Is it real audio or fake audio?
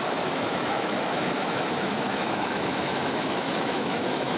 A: fake